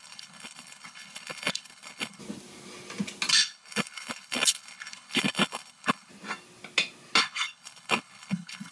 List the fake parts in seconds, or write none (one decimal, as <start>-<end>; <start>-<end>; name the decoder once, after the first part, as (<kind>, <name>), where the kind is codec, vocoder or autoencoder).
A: 0.0-2.2 (codec, HILCodec); 3.3-6.1; 7.2-8.7